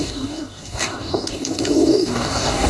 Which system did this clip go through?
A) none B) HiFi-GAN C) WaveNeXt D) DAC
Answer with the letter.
D